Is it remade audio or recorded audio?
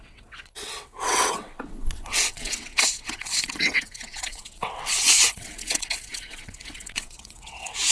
remade